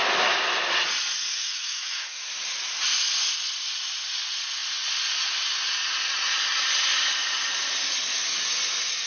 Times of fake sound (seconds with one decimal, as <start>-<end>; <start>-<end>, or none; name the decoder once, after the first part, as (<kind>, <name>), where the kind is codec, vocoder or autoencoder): 1.3-2.3 (autoencoder, DAC-VAE)